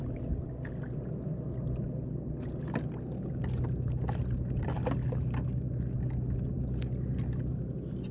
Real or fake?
real